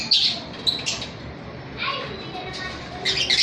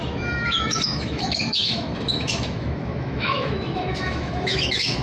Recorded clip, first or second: first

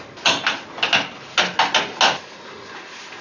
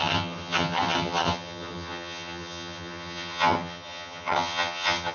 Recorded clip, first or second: first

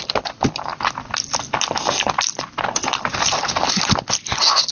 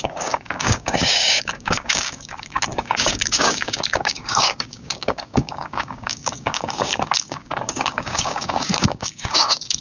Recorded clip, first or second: first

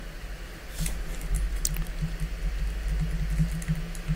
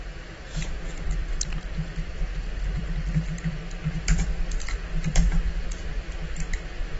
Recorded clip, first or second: first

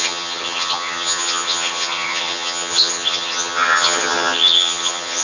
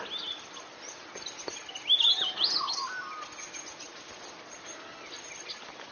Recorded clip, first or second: second